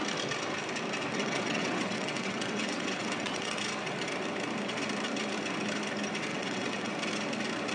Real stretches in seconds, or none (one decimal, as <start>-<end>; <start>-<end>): 0.0-1.1; 3.6-6.3; 6.9-7.7